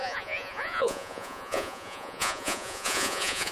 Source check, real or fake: fake